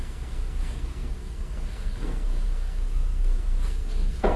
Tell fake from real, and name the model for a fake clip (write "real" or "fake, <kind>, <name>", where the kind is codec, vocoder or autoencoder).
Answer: fake, codec, SNAC